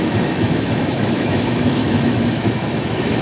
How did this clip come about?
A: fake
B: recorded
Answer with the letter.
A